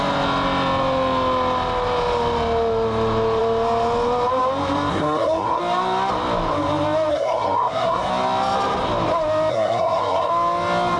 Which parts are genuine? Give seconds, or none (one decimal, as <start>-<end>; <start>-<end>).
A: 0.0-4.9; 5.6-7.1; 8.1-9.5; 10.3-11.0